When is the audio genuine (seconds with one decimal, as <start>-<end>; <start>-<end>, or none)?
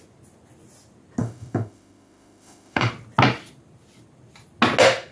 0.0-1.2; 2.9-5.1